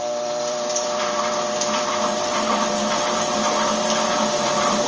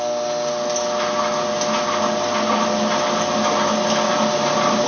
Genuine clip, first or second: second